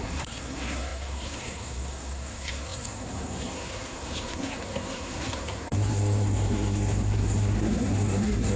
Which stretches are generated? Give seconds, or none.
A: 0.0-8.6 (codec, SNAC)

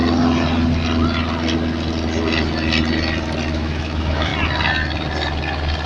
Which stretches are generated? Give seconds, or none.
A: 3.5-4.3 (autoencoder, DAC-VAE)

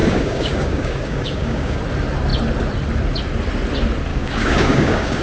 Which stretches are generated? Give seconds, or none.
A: 0.0-1.8 (codec, DAC); 4.1-5.2

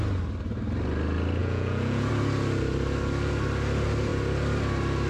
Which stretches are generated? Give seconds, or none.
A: 1.4-2.1 (vocoder, Vocos)

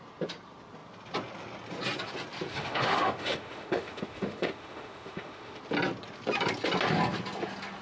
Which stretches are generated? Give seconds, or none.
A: 2.5-5.6 (autoencoder, DAC-VAE)

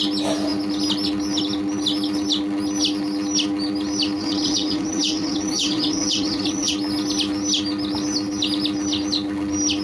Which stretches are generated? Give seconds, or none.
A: 4.2-6.7 (vocoder, WaveNeXt)

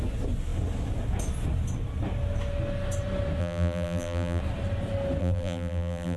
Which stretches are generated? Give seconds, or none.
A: 3.4-4.4 (vocoder, BigVGAN v2); 5.2-6.2

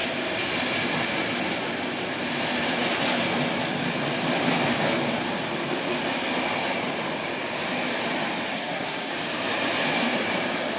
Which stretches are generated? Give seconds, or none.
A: 8.5-9.1 (codec, SNAC)